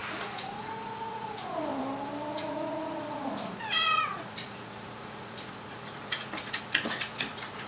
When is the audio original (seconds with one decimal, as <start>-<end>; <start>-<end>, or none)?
1.7-2.3